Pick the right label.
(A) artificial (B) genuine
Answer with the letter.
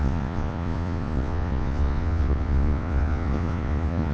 A